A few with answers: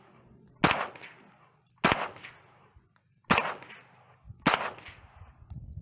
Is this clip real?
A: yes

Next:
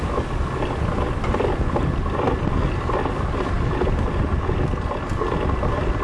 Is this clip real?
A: yes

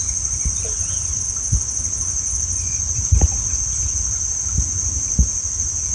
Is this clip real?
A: yes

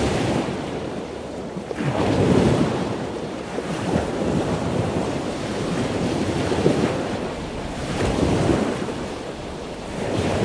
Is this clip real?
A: no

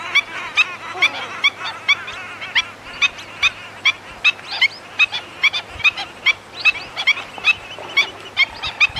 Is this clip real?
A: yes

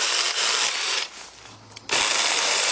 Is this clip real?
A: yes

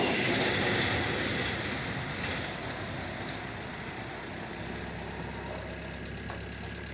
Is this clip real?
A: yes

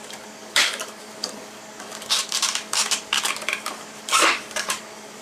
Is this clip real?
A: no